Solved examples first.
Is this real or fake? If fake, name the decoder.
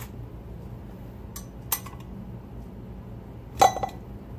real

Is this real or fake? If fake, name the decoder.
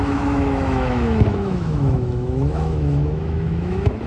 fake, autoencoder, DAC-VAE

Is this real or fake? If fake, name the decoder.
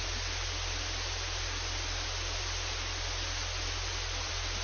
real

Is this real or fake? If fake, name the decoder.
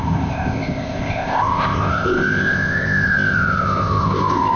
fake, codec, ZipCodec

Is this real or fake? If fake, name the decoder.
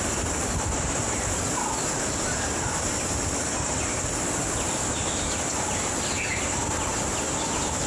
real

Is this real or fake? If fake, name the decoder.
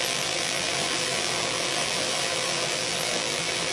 fake, vocoder, BigVGAN v2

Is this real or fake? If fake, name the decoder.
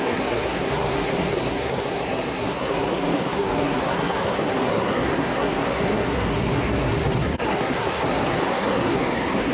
fake, codec, SNAC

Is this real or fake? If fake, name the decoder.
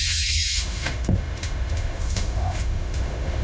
fake, autoencoder, DAC-VAE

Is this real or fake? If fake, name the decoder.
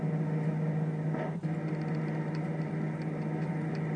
real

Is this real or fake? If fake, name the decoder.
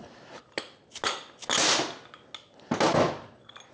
real